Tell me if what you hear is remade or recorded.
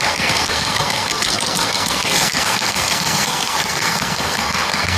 remade